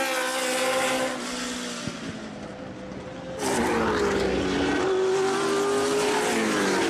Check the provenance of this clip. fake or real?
real